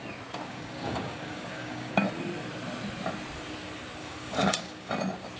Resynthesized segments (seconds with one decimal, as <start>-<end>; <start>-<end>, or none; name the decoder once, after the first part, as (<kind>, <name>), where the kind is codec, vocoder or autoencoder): 0.5-1.9 (codec, DAC); 4.0-4.9

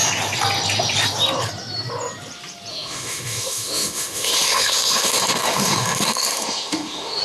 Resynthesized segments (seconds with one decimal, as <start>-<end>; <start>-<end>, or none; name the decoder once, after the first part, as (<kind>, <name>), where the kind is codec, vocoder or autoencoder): 2.7-7.2 (autoencoder, DAC-VAE)

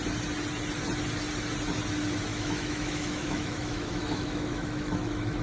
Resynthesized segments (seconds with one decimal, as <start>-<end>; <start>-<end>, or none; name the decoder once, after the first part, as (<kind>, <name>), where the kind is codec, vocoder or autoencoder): 2.3-5.4 (autoencoder, DAC-VAE)

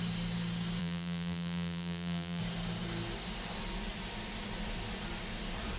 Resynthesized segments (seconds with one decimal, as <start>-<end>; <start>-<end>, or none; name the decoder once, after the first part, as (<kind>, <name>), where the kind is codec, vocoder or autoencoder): 0.8-2.4 (vocoder, BigVGAN v2)

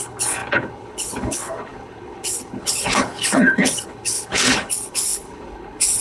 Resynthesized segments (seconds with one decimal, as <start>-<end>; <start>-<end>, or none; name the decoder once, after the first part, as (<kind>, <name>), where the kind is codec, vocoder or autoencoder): 0.0-6.0 (codec, HILCodec)

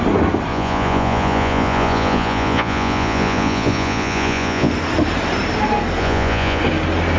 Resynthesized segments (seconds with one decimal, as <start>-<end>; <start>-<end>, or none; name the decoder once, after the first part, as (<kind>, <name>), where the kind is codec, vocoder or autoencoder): 0.5-4.7 (vocoder, Vocos); 6.0-6.6

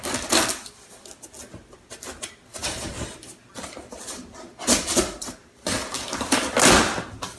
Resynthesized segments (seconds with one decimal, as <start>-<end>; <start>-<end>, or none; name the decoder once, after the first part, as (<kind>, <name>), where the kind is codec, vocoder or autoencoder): none

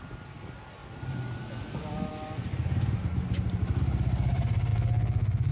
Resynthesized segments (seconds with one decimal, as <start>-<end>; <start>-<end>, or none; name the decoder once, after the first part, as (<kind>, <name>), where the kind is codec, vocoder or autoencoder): 4.7-5.5 (vocoder, BigVGAN v2)